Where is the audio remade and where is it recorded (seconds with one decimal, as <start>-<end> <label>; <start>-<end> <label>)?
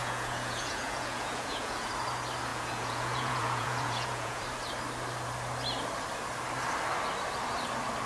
0.0-1.9 remade; 1.9-2.5 recorded; 2.5-4.4 remade; 4.4-8.1 recorded